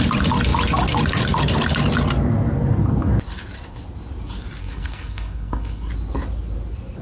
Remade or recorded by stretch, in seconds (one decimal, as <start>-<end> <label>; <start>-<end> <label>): 0.0-4.6 recorded; 4.6-5.9 remade; 5.9-7.0 recorded